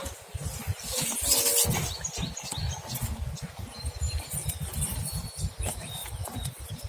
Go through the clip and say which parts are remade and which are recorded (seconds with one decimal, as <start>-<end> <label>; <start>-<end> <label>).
0.0-6.0 recorded; 6.0-6.9 remade